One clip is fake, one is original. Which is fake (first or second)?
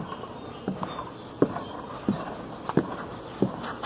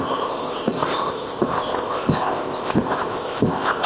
second